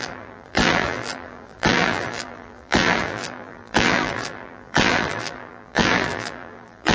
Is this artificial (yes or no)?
yes